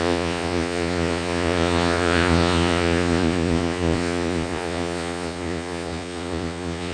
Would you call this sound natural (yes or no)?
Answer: no